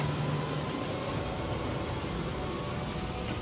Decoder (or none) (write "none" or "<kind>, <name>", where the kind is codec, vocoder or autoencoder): none